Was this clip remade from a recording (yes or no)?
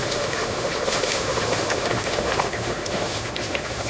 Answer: yes